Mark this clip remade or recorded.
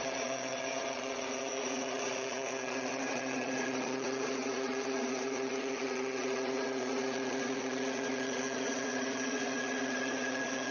remade